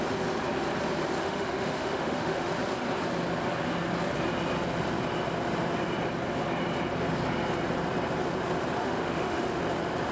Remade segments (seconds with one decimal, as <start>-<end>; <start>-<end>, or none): 1.2-2.5; 8.8-9.6